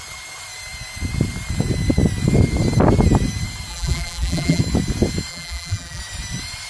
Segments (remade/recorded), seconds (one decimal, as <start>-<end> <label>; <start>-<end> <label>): 0.0-3.7 recorded; 3.7-4.6 remade; 4.6-5.3 recorded; 5.3-6.0 remade; 6.0-6.7 recorded